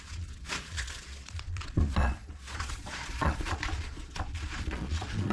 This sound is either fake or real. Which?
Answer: fake